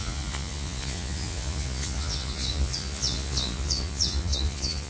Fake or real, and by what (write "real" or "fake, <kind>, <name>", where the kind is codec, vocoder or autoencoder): fake, vocoder, Vocos